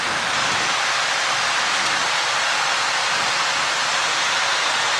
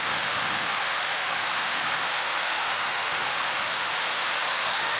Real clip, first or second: first